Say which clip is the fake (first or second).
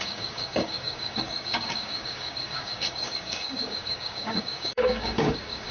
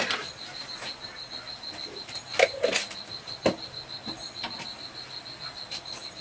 first